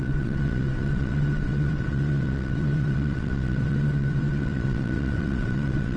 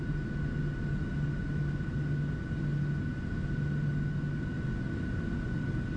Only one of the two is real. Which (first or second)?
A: second